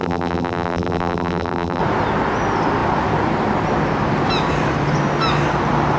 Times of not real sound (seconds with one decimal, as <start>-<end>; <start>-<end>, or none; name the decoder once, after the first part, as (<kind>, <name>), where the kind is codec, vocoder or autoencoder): 0.0-1.8 (vocoder, BigVGAN v2)